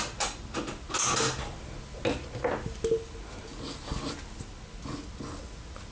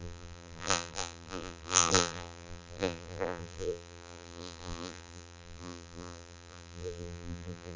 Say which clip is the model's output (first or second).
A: second